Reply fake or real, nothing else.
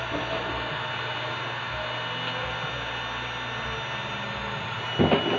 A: real